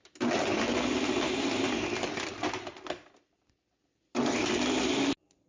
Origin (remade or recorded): recorded